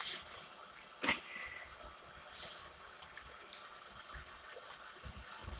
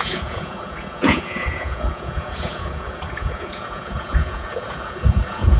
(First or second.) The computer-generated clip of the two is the second